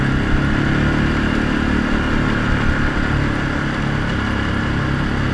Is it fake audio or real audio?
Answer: real